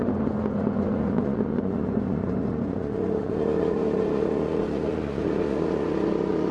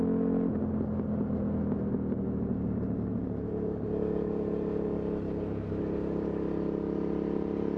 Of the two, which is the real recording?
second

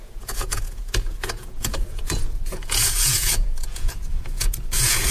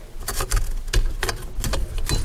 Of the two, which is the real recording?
second